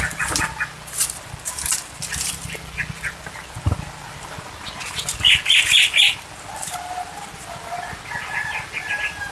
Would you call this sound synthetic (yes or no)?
no